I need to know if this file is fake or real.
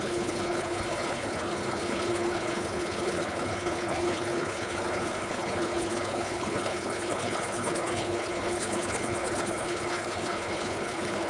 fake